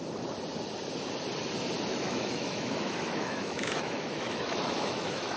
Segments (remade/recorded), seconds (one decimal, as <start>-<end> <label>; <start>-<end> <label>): 0.0-1.9 recorded; 1.9-5.4 remade